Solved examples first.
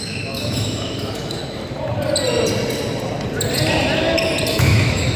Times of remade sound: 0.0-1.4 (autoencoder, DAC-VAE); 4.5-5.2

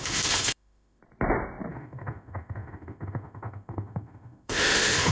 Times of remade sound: 0.0-1.0 (autoencoder, DAC-VAE); 1.7-5.1

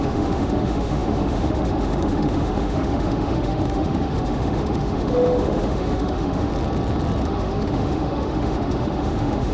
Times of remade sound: 0.0-6.5 (autoencoder, DAC-VAE); 7.2-9.5

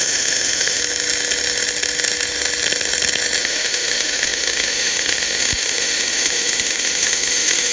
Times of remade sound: 0.0-0.8 (autoencoder, DAC-VAE); 3.4-7.7

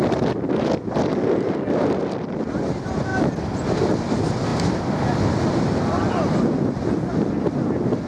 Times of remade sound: none

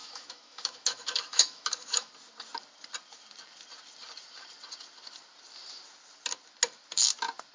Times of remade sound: 0.0-2.1 (autoencoder, DAC-VAE)